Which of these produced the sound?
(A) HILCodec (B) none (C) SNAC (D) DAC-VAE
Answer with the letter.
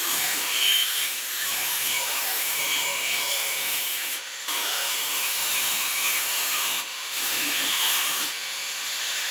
D